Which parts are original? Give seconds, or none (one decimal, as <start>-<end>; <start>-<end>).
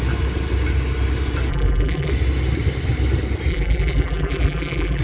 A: 0.0-1.5; 2.1-3.5